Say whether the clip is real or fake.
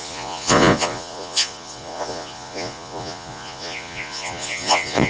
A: fake